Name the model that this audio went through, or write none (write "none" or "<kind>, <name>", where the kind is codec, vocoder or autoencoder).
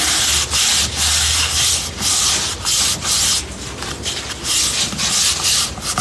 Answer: none